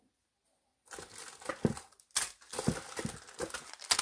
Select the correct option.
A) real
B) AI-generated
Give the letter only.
A